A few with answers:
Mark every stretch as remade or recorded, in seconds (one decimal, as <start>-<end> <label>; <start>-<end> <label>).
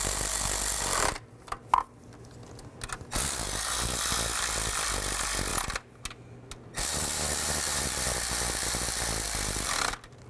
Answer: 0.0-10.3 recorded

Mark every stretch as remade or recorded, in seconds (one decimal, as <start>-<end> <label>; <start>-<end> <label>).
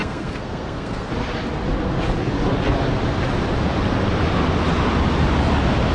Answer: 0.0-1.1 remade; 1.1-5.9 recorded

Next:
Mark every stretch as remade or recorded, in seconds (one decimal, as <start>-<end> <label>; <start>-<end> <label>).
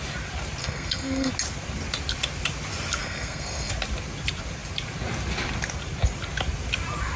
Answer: 0.0-0.6 recorded; 0.6-1.3 remade; 1.3-3.0 recorded; 3.0-3.7 remade; 3.7-7.2 recorded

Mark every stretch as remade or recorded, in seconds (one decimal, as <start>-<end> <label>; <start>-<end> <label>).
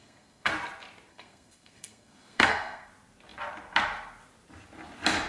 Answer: 0.0-0.5 remade; 0.5-1.1 recorded; 1.1-2.9 remade; 2.9-5.3 recorded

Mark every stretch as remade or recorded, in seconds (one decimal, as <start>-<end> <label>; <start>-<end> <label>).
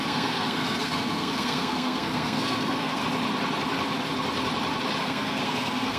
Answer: 0.0-3.0 remade; 3.0-5.0 recorded; 5.0-6.0 remade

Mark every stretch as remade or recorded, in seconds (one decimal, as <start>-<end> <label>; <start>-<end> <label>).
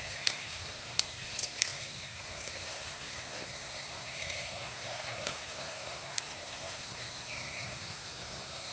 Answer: 0.0-8.7 remade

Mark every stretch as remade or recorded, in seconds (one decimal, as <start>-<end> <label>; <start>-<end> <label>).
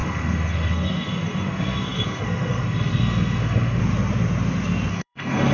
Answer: 0.0-3.8 remade; 3.8-4.9 recorded; 4.9-5.5 remade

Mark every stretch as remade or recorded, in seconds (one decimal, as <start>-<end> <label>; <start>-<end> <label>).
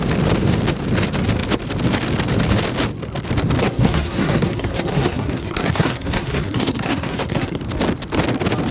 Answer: 0.0-3.6 recorded; 3.6-7.6 remade; 7.6-8.7 recorded